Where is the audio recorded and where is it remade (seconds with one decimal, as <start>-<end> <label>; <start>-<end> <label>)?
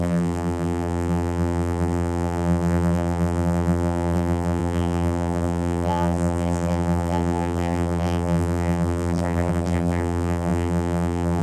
0.0-11.4 remade